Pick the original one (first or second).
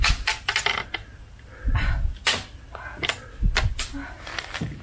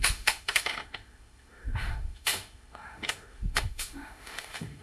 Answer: first